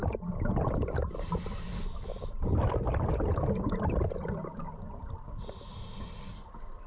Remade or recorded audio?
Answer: remade